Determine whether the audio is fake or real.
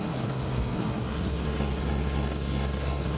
fake